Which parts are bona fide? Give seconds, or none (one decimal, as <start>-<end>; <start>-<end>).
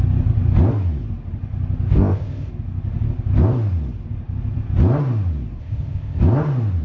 0.0-1.9; 2.5-5.6; 6.2-6.8